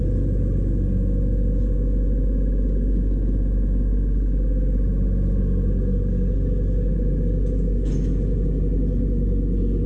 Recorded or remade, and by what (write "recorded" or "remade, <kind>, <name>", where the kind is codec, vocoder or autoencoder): recorded